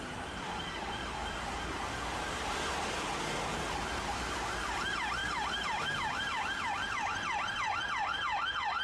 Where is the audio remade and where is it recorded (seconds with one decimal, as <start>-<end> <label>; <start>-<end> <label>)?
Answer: 0.0-8.8 recorded

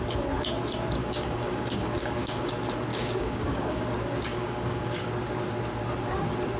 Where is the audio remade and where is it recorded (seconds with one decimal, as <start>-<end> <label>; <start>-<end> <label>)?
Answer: 0.0-1.0 recorded; 1.0-2.5 remade; 2.5-2.9 recorded; 2.9-3.8 remade; 3.8-4.3 recorded; 4.3-5.1 remade; 5.1-6.6 recorded